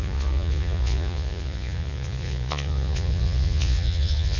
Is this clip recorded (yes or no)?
no